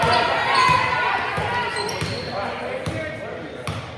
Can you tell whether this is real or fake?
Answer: real